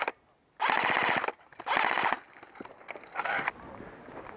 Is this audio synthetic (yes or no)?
no